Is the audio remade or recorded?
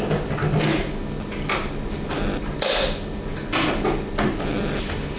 recorded